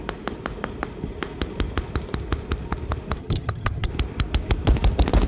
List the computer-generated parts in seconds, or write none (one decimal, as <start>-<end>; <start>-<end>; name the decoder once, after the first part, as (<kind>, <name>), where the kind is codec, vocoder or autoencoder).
3.2-3.9 (vocoder, HiFi-GAN)

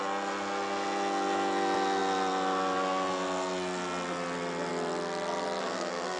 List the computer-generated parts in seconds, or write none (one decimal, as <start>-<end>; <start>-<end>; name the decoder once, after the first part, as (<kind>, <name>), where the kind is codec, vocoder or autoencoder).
5.6-6.2 (codec, SNAC)

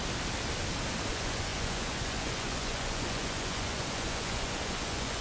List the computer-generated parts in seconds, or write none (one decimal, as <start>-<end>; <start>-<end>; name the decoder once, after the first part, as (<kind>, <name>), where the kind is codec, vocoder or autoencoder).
1.1-5.2 (vocoder, Vocos)

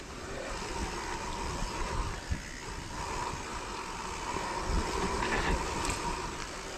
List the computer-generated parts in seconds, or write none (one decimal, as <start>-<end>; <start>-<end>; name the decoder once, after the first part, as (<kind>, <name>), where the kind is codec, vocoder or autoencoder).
2.3-3.0 (vocoder, BigVGAN v2)

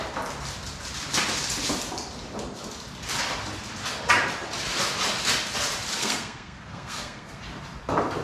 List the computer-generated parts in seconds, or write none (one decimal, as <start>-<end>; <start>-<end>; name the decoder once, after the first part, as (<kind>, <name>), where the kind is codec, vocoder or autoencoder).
6.0-7.4 (codec, SNAC)

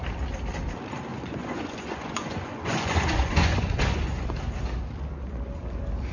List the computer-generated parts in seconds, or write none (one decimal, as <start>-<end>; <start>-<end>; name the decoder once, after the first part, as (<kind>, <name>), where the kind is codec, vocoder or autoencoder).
1.1-4.3 (vocoder, Vocos)

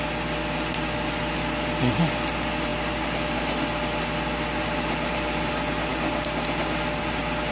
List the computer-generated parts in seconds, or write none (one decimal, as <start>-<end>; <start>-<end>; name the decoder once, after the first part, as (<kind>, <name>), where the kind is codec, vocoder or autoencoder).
none

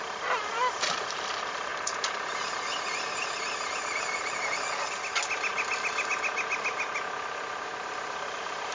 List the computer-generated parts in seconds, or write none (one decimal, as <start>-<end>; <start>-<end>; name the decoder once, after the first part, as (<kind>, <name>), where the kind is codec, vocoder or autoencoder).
none